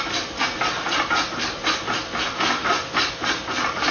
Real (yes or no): yes